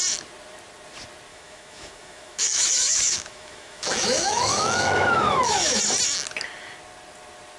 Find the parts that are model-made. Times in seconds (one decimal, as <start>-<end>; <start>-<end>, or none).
1.3-5.8